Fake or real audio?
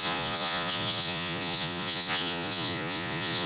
fake